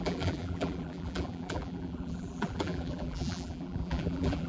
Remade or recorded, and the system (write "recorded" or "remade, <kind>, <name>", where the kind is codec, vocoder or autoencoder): remade, vocoder, BigVGAN v2